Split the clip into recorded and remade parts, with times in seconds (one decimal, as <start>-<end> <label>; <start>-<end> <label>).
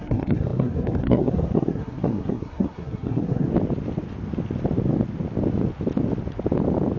0.0-3.5 remade; 3.5-7.0 recorded